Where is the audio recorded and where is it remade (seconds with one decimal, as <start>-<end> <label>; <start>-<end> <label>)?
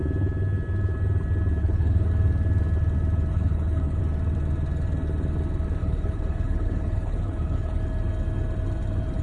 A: 0.0-1.6 recorded; 1.6-2.1 remade; 2.1-3.3 recorded; 3.3-4.0 remade; 4.0-5.8 recorded; 5.8-7.8 remade; 7.8-9.2 recorded